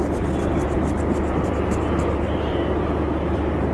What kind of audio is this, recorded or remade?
recorded